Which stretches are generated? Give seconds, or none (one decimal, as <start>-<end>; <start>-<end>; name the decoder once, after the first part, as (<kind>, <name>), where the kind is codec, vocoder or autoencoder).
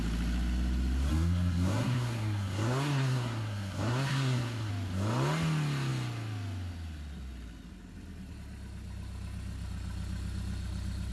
1.1-4.7 (codec, SNAC)